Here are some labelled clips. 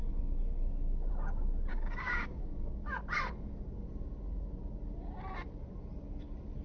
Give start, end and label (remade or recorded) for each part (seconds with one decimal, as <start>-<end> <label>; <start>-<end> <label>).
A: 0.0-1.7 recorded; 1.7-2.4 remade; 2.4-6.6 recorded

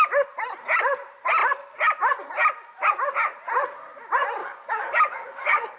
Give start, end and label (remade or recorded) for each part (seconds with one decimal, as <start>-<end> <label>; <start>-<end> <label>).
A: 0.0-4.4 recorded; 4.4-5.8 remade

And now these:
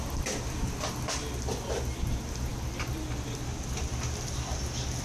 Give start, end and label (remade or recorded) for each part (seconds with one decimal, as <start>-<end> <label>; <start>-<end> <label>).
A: 0.0-5.0 recorded

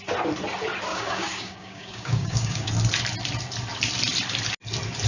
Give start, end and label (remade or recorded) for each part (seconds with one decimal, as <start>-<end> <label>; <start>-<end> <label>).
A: 0.0-0.9 recorded; 0.9-2.7 remade; 2.7-5.1 recorded